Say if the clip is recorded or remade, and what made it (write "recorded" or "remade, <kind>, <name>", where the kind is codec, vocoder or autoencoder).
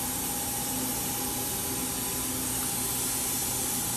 recorded